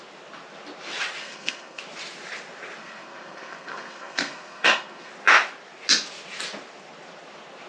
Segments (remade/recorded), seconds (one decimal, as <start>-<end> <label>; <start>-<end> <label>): 0.0-1.2 recorded; 1.2-1.8 remade; 1.8-2.8 recorded; 2.8-5.1 remade; 5.1-7.7 recorded